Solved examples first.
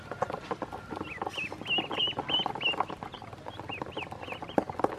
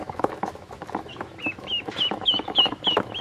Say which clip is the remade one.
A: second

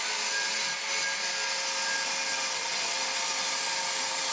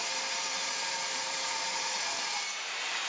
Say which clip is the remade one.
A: second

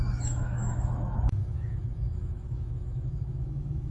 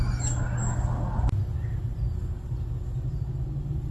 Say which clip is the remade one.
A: first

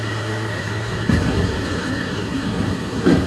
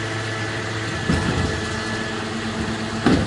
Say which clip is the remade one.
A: first